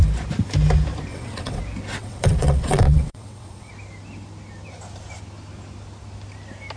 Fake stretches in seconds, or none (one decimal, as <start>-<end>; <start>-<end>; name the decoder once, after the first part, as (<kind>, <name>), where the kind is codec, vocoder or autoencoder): 1.1-1.6 (vocoder, WaveNeXt); 2.0-3.7